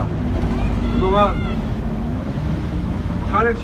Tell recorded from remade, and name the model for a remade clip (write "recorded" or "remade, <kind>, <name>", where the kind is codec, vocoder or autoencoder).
remade, autoencoder, DAC-VAE